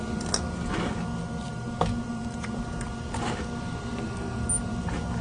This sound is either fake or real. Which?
real